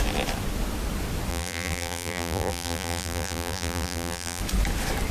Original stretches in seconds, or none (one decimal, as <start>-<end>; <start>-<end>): 0.0-1.3; 4.4-5.1